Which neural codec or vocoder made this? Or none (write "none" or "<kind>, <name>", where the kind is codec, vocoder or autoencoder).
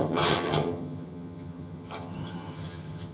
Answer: vocoder, HiFi-GAN